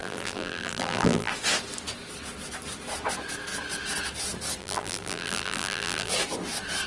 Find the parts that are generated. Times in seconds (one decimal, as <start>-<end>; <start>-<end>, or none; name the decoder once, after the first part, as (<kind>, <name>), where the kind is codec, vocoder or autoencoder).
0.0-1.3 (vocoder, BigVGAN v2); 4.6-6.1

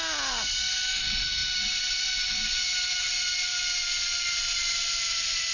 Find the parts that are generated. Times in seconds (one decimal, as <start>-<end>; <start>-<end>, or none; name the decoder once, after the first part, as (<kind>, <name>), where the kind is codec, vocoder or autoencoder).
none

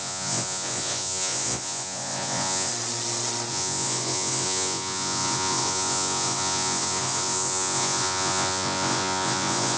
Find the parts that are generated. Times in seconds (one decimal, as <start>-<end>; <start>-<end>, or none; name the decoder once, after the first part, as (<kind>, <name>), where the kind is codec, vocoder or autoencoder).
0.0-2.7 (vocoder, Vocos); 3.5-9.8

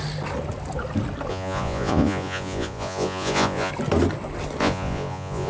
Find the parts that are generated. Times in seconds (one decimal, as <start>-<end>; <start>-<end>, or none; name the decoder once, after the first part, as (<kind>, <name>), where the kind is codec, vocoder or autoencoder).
1.3-3.7 (vocoder, Vocos); 4.6-5.5